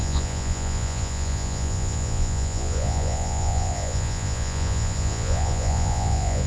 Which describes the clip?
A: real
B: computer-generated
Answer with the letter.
B